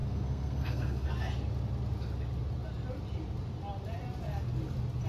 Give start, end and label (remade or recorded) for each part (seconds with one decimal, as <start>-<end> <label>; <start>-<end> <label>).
0.0-1.1 remade; 1.1-5.1 recorded